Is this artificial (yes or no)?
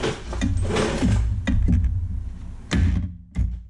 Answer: no